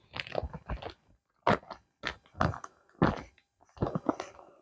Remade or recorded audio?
recorded